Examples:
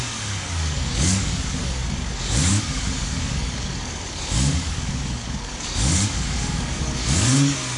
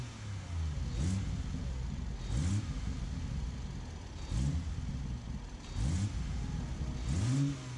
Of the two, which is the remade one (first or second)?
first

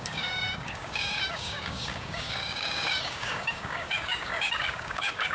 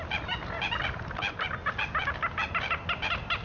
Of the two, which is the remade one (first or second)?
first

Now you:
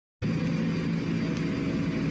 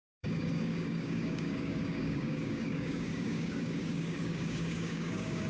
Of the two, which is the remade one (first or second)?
second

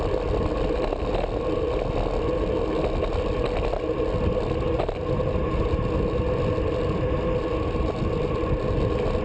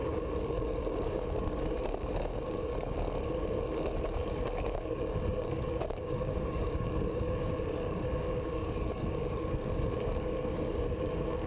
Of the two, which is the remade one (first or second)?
second